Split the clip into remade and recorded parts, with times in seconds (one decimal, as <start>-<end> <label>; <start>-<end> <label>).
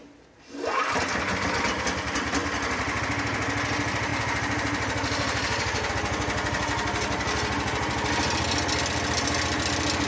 0.0-4.1 recorded; 4.1-5.9 remade; 5.9-10.1 recorded